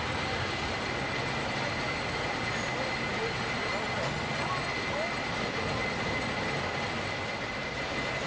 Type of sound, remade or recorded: recorded